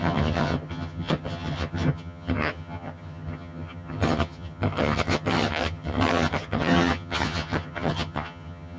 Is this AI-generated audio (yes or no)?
yes